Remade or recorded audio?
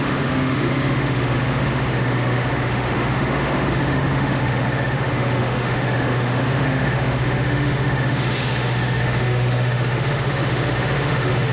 remade